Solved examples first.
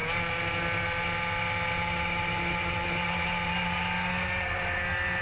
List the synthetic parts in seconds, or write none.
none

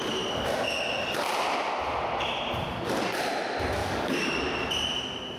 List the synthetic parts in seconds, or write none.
3.8-4.4